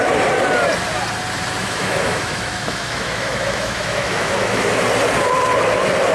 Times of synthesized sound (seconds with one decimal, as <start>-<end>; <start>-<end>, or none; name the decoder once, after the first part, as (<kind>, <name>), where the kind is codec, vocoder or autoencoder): 1.6-4.7 (autoencoder, DAC-VAE)

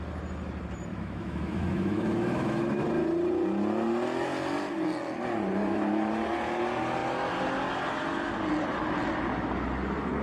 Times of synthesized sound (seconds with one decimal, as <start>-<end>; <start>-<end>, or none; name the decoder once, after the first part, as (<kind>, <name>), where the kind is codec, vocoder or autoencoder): 0.9-2.8 (autoencoder, DAC-VAE)

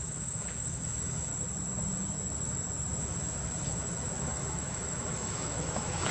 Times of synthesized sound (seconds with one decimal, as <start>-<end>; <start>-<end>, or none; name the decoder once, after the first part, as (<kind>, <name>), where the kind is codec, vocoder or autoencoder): 0.0-1.3 (autoencoder, DAC-VAE); 3.0-6.1

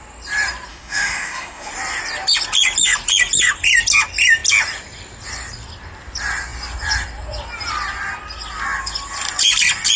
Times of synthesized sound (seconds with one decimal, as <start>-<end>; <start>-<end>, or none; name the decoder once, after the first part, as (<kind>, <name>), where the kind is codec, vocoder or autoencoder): 0.7-1.7 (autoencoder, DAC-VAE)

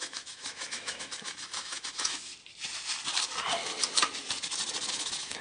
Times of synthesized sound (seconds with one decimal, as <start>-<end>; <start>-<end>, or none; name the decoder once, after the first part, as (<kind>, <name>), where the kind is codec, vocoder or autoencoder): 0.0-2.3 (autoencoder, DAC-VAE); 4.9-5.4